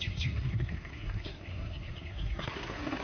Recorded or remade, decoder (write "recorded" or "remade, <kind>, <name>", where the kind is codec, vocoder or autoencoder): remade, codec, SNAC